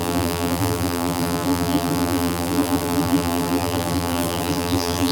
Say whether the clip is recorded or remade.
remade